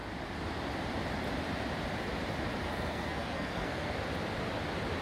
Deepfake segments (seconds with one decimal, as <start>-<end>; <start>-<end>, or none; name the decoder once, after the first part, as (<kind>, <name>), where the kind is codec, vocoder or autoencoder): 2.7-3.9 (codec, SNAC)